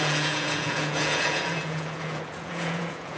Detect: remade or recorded remade